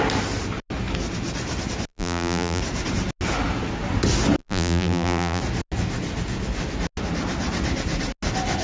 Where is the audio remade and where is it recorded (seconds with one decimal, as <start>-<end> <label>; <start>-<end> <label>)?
0.0-1.9 recorded; 1.9-2.6 remade; 2.6-4.4 recorded; 4.4-5.4 remade; 5.4-8.6 recorded

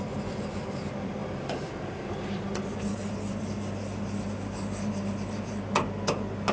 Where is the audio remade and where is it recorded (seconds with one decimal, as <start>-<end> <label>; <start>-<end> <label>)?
0.0-1.2 recorded; 1.2-5.0 remade; 5.0-6.5 recorded

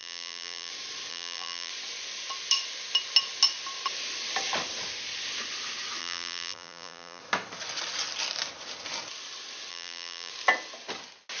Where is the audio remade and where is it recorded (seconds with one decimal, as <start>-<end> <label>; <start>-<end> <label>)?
0.0-0.7 remade; 0.7-1.1 recorded; 1.1-1.7 remade; 1.7-6.0 recorded; 6.0-7.2 remade; 7.2-9.7 recorded; 9.7-10.3 remade; 10.3-11.4 recorded

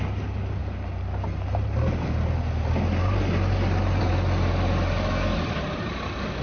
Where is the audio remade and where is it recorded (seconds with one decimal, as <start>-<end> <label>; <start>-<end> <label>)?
0.0-6.4 recorded